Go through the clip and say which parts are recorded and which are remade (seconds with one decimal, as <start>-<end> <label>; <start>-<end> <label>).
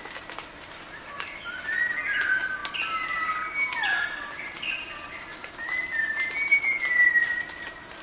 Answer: 0.0-8.0 recorded